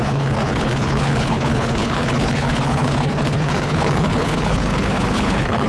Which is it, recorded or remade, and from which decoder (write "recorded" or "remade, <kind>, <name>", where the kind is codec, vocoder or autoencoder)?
remade, codec, HILCodec